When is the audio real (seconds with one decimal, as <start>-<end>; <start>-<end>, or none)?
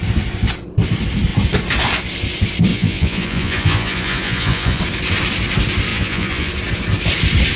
0.0-2.7; 4.8-5.9; 6.5-7.6